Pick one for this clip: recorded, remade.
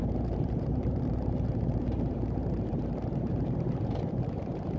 remade